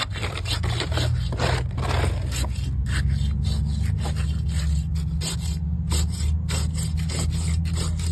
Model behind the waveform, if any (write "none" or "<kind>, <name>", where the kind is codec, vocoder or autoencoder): none